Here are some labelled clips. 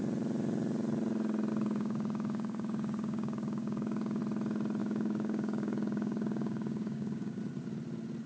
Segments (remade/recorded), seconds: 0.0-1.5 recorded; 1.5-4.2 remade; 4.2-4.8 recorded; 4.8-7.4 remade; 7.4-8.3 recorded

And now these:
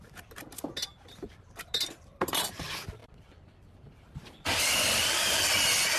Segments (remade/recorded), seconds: 0.0-3.0 recorded; 3.0-5.4 remade; 5.4-6.0 recorded

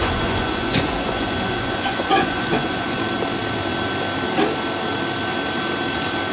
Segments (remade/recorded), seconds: 0.0-3.0 remade; 3.0-6.3 recorded

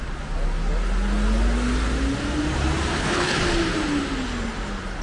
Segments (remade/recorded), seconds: 0.0-2.9 recorded; 2.9-3.4 remade; 3.4-5.0 recorded